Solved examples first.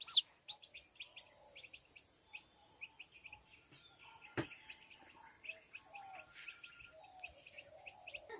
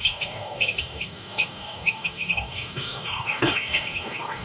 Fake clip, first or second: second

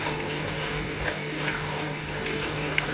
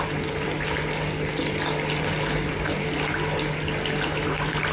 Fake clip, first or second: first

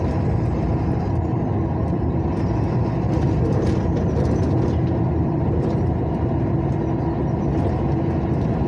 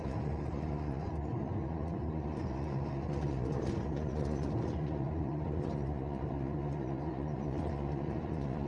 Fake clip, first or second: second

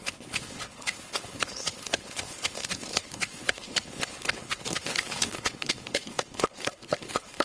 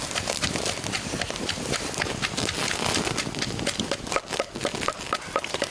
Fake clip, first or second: first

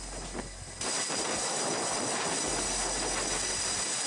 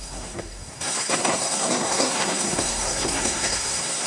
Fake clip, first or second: second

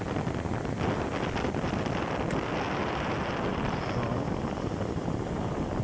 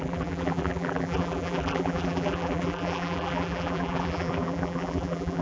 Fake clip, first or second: second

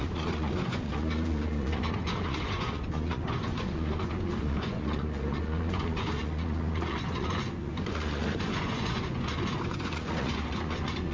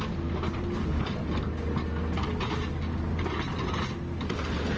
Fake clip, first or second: first